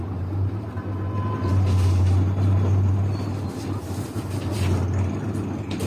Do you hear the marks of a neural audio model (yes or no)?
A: no